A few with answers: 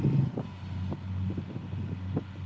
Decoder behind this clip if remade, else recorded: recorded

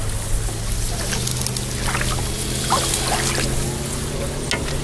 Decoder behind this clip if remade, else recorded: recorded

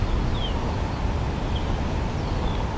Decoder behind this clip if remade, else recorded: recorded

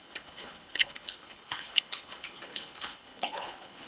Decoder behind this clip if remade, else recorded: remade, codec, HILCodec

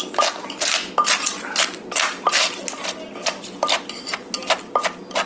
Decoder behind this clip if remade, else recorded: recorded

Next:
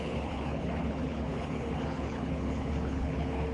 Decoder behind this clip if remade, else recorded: remade, codec, HILCodec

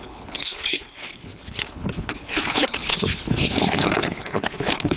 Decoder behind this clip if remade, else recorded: remade, codec, HILCodec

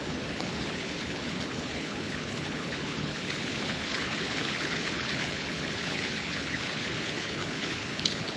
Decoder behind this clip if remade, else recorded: remade, codec, HILCodec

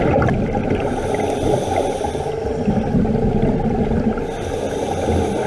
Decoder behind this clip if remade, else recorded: recorded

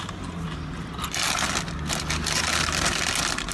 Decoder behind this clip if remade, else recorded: recorded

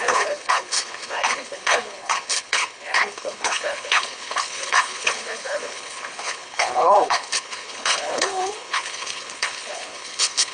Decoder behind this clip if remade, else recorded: remade, codec, HILCodec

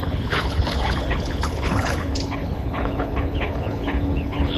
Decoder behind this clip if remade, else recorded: remade, codec, HILCodec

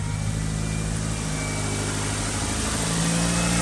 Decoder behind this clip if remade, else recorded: recorded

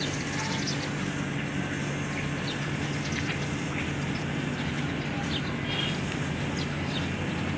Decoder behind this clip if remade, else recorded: recorded